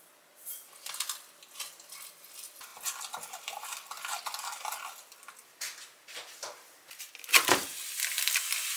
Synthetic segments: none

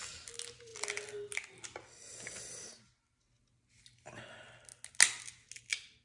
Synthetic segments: none